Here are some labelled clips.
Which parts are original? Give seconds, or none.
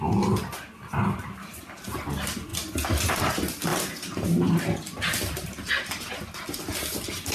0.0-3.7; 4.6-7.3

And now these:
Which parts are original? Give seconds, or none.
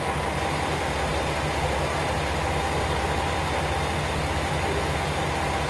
0.0-5.7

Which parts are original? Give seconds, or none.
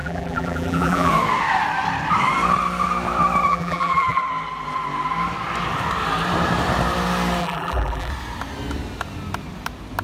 1.1-3.5; 4.2-7.4; 8.1-10.0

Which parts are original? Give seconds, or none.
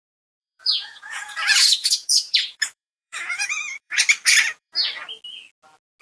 0.0-0.4; 4.0-4.4; 4.9-6.0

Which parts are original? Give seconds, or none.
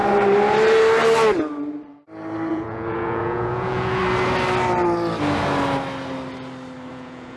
0.0-2.5; 4.0-6.9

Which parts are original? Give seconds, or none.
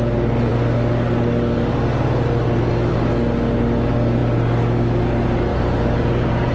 0.0-5.5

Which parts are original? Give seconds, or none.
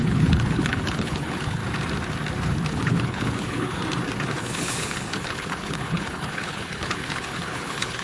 1.6-2.7; 3.8-4.4